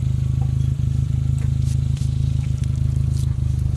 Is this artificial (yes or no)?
no